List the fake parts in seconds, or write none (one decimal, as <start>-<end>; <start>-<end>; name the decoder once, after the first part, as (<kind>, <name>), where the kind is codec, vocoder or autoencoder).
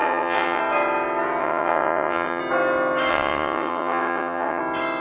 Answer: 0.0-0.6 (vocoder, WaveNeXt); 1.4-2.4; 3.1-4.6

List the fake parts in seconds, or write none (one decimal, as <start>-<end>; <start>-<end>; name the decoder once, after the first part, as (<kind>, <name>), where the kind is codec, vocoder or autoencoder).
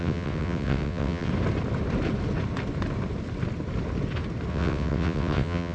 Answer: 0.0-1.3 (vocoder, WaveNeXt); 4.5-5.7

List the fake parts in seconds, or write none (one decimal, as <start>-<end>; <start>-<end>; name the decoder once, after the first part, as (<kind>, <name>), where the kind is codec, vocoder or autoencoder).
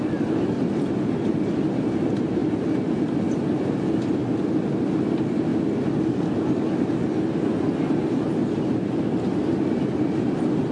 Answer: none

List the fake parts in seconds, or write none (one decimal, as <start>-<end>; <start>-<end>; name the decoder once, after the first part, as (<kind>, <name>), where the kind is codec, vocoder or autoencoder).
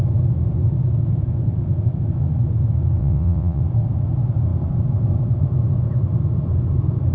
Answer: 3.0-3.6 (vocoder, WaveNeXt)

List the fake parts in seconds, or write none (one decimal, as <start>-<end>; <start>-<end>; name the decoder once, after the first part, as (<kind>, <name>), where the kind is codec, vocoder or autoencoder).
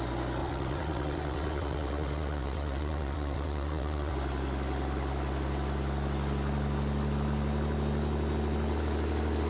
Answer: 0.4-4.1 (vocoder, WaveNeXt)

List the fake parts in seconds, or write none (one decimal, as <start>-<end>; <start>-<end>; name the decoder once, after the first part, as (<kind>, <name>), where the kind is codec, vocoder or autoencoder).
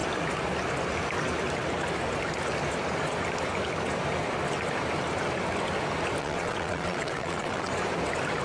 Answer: 6.2-7.7 (vocoder, WaveNeXt)